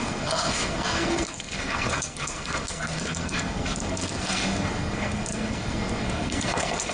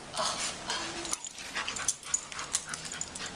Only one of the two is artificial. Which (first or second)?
first